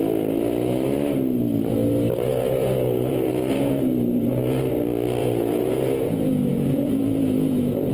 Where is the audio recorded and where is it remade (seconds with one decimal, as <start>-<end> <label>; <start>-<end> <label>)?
0.0-2.3 recorded; 2.3-4.7 remade; 4.7-5.2 recorded; 5.2-7.9 remade